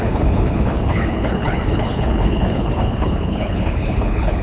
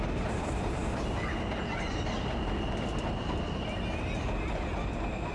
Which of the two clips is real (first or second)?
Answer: second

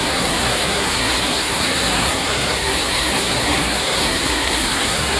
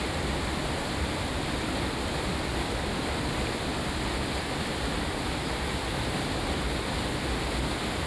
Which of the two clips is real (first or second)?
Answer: second